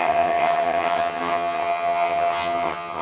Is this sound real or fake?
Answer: fake